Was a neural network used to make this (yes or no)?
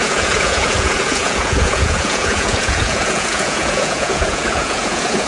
yes